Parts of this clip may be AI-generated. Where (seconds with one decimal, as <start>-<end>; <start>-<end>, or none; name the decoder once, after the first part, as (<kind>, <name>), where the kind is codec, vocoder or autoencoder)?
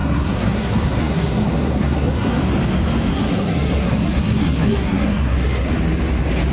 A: 0.0-2.4 (codec, SNAC); 3.1-5.7